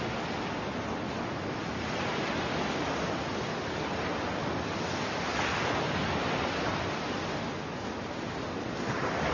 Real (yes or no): yes